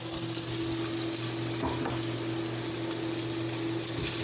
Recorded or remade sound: recorded